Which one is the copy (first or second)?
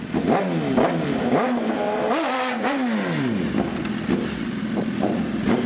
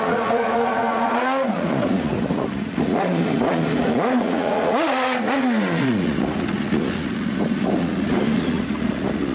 second